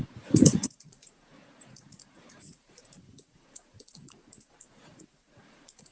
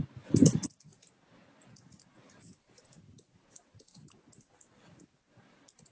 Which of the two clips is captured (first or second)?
second